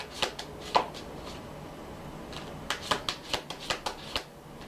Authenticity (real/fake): real